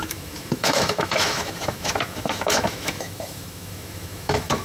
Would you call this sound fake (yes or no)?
yes